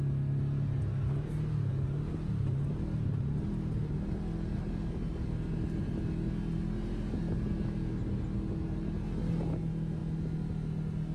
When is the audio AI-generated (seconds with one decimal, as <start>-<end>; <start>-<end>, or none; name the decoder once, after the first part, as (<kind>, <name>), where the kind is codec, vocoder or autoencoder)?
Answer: none